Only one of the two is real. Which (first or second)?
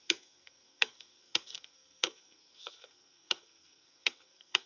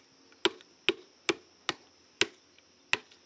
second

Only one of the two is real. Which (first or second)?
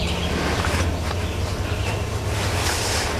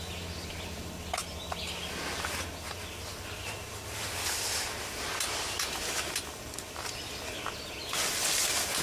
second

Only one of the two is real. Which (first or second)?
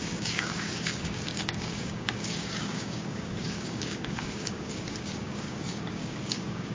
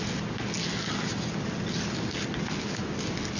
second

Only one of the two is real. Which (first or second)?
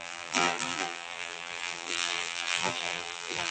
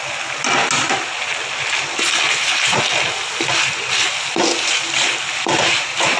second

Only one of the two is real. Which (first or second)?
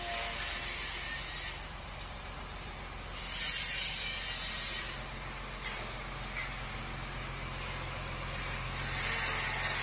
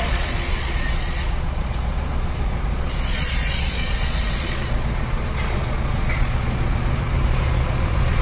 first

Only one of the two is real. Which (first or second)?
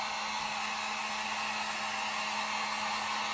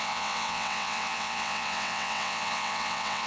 first